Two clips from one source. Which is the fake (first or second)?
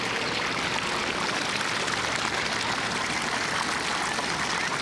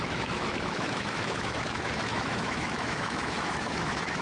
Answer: second